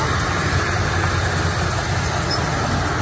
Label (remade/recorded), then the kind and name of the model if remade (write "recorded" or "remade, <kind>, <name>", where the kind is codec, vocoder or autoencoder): recorded